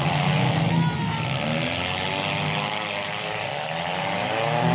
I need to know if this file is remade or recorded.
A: recorded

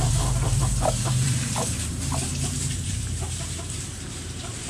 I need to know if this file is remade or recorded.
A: remade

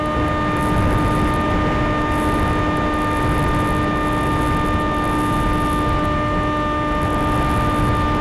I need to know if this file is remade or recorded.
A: recorded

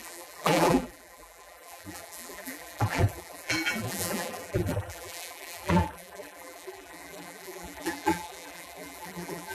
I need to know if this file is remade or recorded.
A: remade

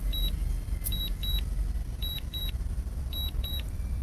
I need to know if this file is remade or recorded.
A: remade